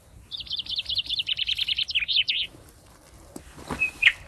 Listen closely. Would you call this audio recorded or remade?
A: remade